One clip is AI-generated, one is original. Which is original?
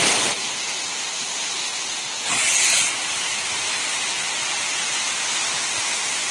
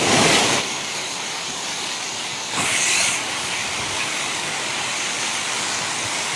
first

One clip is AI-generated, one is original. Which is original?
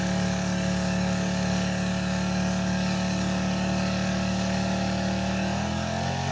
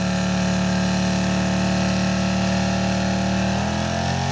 second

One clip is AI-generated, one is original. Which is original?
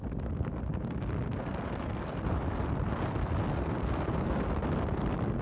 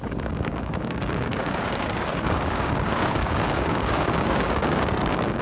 first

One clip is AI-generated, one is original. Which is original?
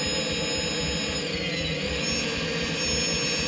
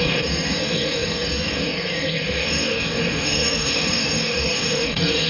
first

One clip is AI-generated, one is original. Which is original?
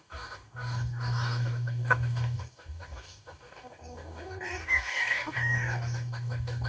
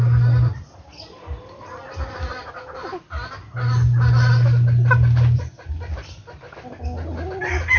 second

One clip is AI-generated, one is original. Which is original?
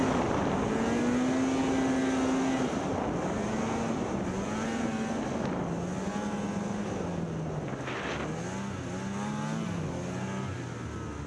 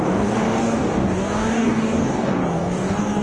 first